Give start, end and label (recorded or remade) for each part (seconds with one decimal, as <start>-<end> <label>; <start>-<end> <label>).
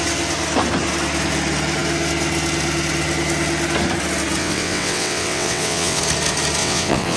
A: 0.0-4.4 recorded; 4.4-6.0 remade; 6.0-6.6 recorded; 6.6-7.2 remade